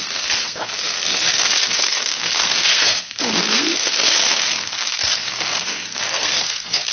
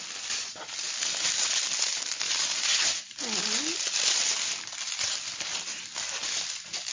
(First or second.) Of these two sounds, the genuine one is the second